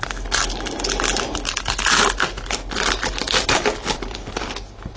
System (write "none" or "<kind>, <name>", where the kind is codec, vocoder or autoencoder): none